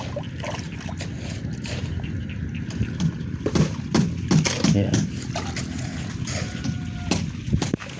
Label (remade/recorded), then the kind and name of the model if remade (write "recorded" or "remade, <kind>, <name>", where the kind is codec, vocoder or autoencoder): recorded